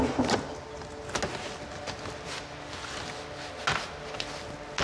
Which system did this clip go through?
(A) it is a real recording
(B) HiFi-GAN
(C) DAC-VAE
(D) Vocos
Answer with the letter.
A